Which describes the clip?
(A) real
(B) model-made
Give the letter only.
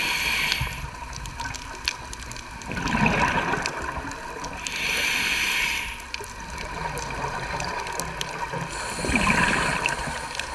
A